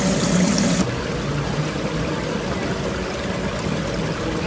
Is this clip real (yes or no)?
yes